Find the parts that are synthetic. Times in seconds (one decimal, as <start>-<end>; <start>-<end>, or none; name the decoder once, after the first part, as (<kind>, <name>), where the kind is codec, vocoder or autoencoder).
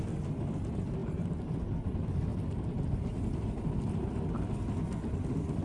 1.0-1.6 (vocoder, BigVGAN v2)